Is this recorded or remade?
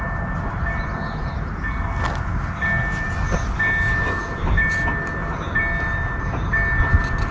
recorded